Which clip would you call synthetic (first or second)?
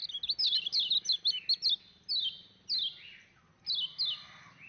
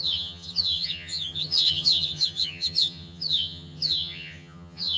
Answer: second